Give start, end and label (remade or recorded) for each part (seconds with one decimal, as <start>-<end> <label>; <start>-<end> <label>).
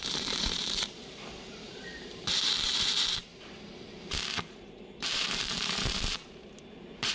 0.0-3.3 remade; 3.3-4.5 recorded; 4.5-7.1 remade